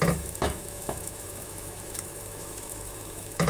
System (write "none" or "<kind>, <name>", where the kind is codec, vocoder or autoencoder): autoencoder, DAC-VAE